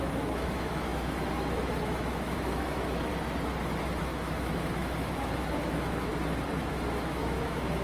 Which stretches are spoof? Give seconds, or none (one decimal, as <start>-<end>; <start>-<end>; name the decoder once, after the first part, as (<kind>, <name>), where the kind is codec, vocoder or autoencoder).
0.0-3.1 (autoencoder, DAC-VAE); 4.0-6.1; 6.6-7.8